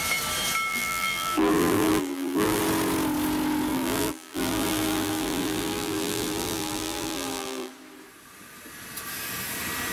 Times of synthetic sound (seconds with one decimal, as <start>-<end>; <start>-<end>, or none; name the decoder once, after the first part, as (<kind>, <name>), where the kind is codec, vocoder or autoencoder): 0.7-2.6 (vocoder, BigVGAN v2); 3.7-7.7